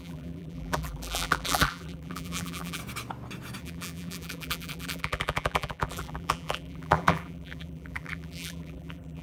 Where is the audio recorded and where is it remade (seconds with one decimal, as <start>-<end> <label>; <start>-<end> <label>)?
0.0-2.8 remade; 2.8-3.6 recorded; 3.6-9.2 remade